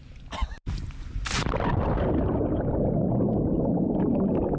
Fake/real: real